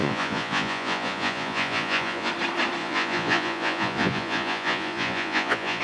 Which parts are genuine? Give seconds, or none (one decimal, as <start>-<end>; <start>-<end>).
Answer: 2.3-2.8